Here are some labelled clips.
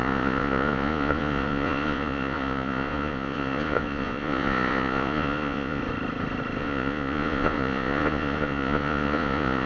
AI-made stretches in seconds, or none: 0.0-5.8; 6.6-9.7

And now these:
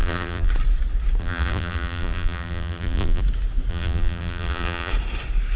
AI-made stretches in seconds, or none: 0.0-0.5; 1.2-3.2; 3.7-4.9

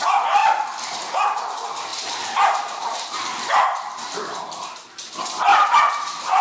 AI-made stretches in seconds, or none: 0.0-0.4; 1.5-6.4

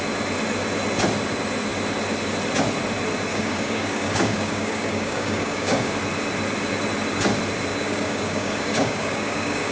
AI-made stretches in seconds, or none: 3.3-5.9; 7.7-9.7